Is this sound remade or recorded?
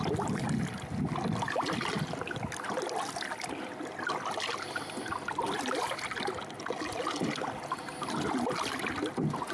recorded